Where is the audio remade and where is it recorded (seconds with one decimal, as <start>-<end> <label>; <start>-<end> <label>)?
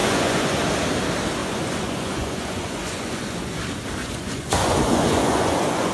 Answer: 0.0-0.6 remade; 0.6-1.4 recorded; 1.4-3.6 remade; 3.6-4.0 recorded; 4.0-5.9 remade